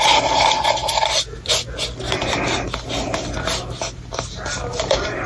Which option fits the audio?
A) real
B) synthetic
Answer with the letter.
A